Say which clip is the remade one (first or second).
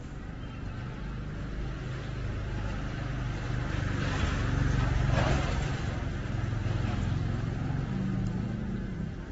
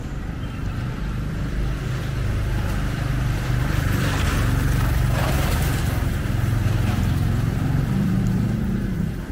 second